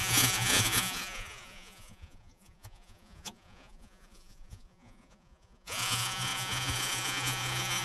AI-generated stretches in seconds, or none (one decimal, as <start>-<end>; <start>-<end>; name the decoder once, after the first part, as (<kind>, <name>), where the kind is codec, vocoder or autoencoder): 0.0-7.8 (vocoder, Vocos)